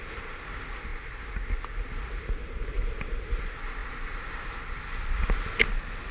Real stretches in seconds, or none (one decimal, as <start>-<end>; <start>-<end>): 0.0-0.9; 2.4-3.8; 5.5-6.1